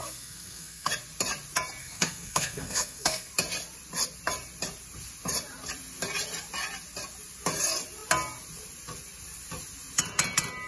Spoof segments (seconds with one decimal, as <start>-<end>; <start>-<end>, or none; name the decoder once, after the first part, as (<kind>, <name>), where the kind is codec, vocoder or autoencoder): 0.0-0.9 (codec, SNAC); 1.8-3.3